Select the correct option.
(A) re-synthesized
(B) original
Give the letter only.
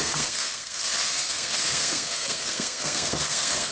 A